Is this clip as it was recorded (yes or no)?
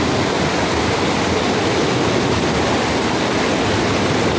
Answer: yes